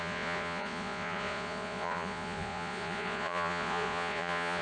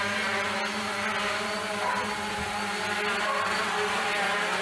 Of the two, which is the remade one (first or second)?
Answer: first